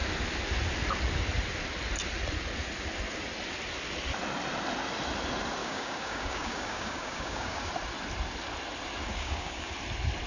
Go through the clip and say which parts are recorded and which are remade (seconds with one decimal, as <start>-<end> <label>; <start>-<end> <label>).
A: 0.0-5.6 recorded; 5.6-7.7 remade; 7.7-9.0 recorded; 9.0-9.7 remade; 9.7-10.3 recorded